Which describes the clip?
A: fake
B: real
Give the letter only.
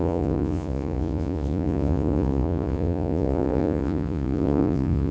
A